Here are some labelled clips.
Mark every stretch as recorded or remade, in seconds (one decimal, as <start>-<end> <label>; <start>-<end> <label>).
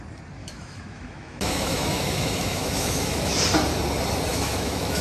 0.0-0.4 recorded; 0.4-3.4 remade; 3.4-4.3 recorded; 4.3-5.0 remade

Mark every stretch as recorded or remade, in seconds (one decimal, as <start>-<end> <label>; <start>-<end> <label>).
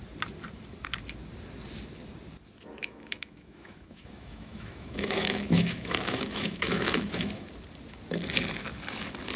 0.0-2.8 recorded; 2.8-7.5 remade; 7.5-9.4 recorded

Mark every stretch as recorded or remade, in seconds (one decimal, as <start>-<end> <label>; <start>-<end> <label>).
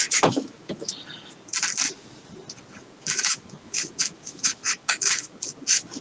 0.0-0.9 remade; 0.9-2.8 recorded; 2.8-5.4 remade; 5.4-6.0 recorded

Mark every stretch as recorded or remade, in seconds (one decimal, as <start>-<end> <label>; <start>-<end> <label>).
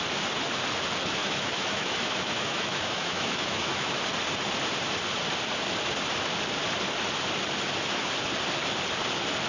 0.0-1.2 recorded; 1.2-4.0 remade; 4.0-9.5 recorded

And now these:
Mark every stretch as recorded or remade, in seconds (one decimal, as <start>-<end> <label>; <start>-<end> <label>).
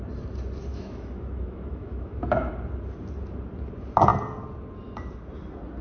0.0-0.7 recorded; 0.7-2.5 remade; 2.5-5.8 recorded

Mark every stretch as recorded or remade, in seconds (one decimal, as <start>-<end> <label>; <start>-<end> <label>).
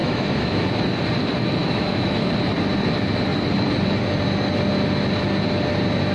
0.0-0.8 remade; 0.8-1.6 recorded; 1.6-2.3 remade; 2.3-6.1 recorded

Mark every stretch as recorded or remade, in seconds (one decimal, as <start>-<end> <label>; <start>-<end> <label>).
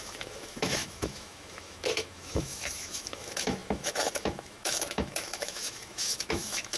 0.0-6.8 remade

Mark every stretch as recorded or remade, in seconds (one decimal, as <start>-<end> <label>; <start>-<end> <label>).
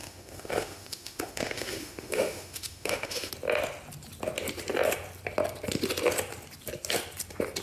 0.0-3.3 remade; 3.3-7.6 recorded